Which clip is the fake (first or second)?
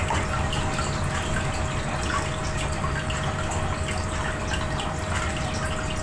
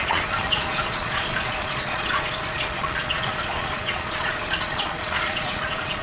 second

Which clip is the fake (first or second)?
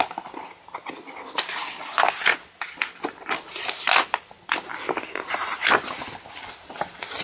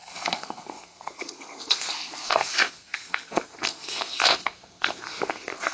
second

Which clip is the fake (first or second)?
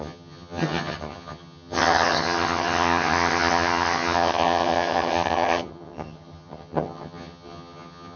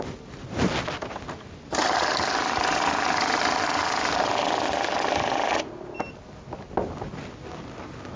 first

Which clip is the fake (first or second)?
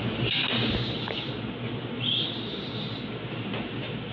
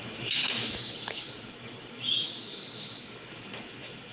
second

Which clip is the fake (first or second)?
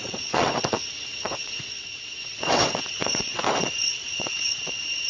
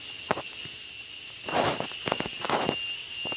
first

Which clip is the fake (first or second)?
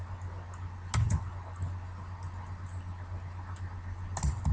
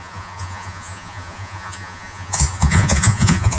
second